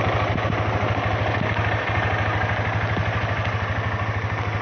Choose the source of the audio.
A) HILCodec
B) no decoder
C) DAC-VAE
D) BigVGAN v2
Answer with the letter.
B